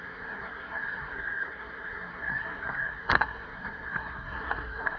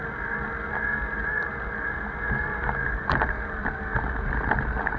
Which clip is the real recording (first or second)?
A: second